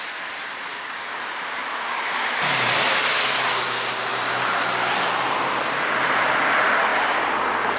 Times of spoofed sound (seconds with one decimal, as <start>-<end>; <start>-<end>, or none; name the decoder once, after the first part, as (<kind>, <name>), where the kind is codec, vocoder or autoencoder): 0.7-1.2 (codec, DAC)